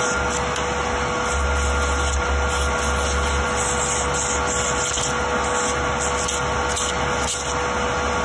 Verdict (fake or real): real